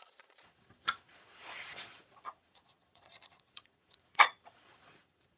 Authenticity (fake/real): fake